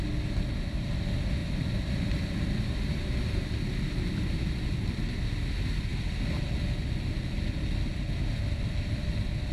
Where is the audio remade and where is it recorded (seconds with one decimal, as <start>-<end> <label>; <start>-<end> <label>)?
0.0-1.4 recorded; 1.4-3.0 remade; 3.0-5.9 recorded; 5.9-6.5 remade; 6.5-9.5 recorded